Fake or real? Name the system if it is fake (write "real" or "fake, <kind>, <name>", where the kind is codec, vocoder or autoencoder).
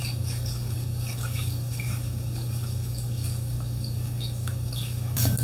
fake, codec, DAC